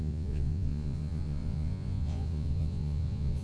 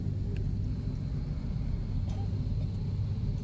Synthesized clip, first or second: first